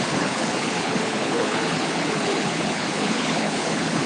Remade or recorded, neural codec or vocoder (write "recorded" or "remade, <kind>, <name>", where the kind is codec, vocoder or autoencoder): remade, codec, HILCodec